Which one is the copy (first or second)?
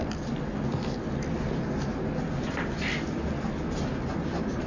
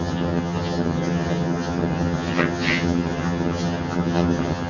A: second